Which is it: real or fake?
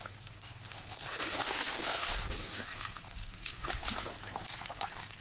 fake